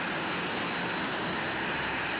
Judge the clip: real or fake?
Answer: real